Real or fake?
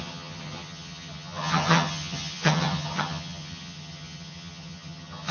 fake